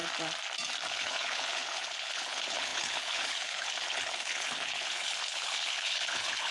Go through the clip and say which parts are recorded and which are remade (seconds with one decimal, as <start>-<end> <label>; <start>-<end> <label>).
0.0-0.9 recorded; 0.9-6.5 remade